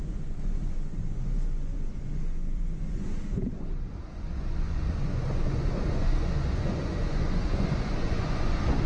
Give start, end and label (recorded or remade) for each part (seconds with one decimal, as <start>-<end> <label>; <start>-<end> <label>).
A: 0.0-8.9 remade

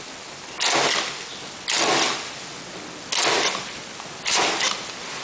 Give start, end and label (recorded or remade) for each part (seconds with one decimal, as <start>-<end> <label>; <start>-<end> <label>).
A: 0.0-5.2 recorded

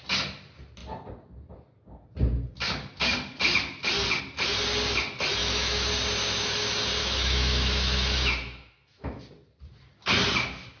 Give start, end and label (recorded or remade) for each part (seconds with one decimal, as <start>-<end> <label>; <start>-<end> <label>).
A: 0.0-5.4 recorded; 5.4-5.9 remade; 5.9-7.0 recorded; 7.0-9.2 remade; 9.2-10.8 recorded

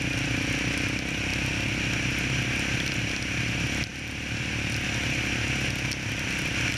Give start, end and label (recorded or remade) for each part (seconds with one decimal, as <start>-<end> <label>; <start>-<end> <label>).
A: 0.0-6.8 recorded

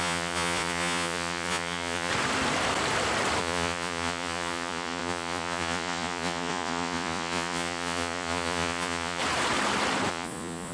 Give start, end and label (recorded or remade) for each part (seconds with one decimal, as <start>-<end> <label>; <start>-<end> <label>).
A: 0.0-2.1 remade; 2.1-3.4 recorded; 3.4-9.2 remade; 9.2-10.1 recorded; 10.1-10.7 remade

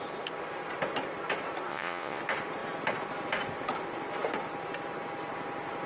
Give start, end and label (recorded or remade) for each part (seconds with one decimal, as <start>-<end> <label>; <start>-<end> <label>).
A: 0.0-1.7 recorded; 1.7-2.2 remade; 2.2-5.9 recorded

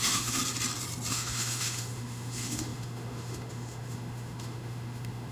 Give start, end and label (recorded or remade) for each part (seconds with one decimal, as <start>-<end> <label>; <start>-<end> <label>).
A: 0.0-0.4 remade; 0.4-1.1 recorded; 1.1-5.3 remade

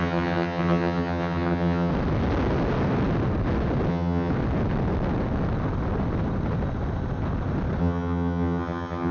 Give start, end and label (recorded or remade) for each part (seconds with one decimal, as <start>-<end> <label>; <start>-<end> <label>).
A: 0.0-1.9 remade; 1.9-3.9 recorded; 3.9-4.3 remade; 4.3-7.8 recorded; 7.8-9.1 remade